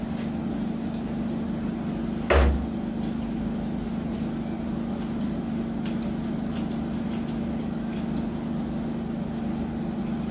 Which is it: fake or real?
real